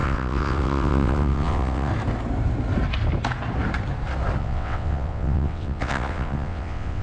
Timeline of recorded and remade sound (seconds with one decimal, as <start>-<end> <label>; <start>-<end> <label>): 0.0-1.9 remade; 1.9-4.4 recorded; 4.4-7.0 remade